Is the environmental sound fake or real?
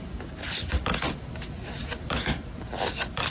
real